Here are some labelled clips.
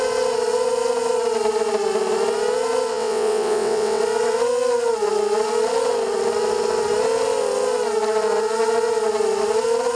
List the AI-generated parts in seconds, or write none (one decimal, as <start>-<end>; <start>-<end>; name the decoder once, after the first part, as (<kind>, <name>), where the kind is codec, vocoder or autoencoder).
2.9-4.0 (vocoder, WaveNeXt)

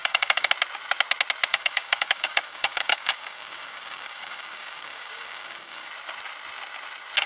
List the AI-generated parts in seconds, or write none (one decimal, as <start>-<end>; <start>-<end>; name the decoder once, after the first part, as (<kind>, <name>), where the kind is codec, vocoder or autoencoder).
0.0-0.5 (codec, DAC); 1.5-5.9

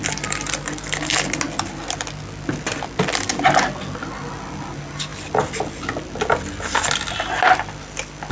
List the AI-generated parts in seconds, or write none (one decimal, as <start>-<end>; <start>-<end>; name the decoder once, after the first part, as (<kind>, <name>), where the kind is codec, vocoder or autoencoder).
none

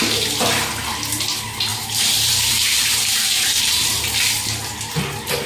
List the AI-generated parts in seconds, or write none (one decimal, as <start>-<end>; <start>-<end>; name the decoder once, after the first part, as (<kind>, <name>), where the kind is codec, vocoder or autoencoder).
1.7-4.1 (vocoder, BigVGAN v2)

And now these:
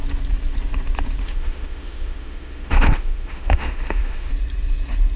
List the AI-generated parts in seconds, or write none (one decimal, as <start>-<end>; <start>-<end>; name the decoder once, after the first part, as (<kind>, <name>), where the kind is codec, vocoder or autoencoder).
1.2-4.3 (autoencoder, DAC-VAE)

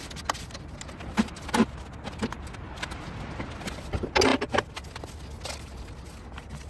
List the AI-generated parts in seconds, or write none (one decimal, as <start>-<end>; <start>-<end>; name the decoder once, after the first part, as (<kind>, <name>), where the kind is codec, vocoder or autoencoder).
none

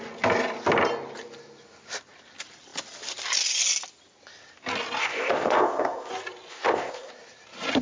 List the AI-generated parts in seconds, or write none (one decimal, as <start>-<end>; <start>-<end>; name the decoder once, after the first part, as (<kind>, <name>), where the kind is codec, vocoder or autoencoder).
5.0-6.1 (codec, ZipCodec); 6.5-7.1

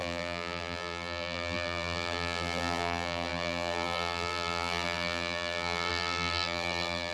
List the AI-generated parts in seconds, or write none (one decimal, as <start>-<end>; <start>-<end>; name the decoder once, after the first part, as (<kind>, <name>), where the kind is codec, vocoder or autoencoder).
0.0-7.1 (vocoder, BigVGAN v2)